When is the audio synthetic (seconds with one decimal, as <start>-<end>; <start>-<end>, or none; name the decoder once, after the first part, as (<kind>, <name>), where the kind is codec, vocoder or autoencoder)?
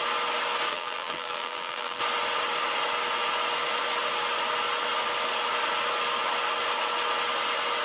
0.7-2.0 (vocoder, BigVGAN v2)